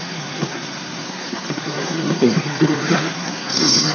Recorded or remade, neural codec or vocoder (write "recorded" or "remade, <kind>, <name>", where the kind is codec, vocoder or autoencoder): remade, codec, SNAC